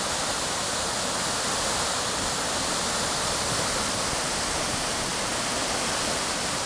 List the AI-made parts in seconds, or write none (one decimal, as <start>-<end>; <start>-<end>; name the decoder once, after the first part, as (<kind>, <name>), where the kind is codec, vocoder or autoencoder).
none